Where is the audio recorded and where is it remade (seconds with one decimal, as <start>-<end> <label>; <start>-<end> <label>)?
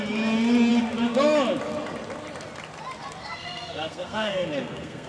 0.0-3.2 recorded; 3.2-5.1 remade